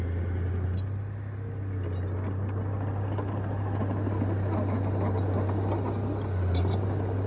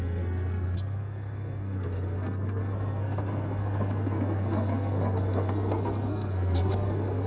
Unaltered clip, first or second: first